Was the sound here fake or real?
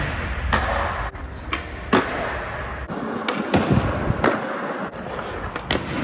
real